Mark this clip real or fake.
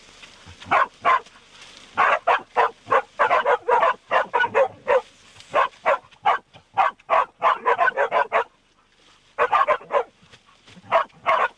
real